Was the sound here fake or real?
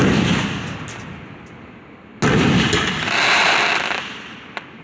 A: real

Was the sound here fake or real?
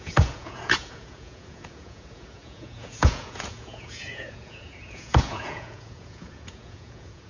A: fake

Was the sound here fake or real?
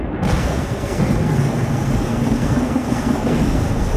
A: fake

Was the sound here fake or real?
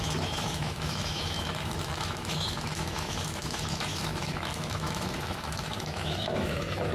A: fake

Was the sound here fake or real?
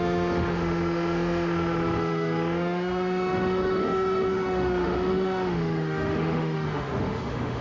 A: fake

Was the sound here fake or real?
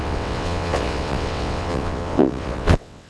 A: fake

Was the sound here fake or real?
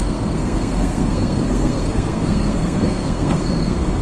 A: fake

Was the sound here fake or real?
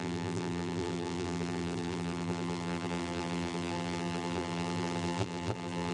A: fake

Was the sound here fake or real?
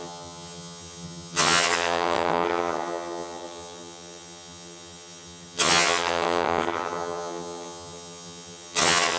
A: fake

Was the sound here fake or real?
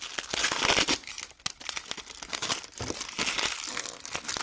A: real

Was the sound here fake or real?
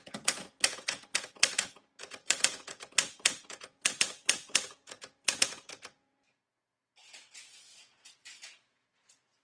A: fake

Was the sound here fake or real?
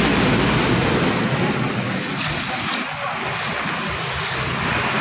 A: real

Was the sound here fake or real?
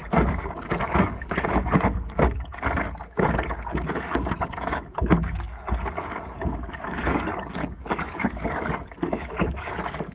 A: fake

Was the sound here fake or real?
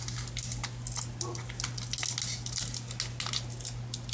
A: real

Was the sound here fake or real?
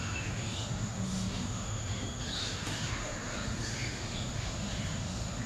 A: fake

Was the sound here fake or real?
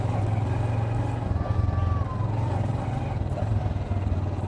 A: real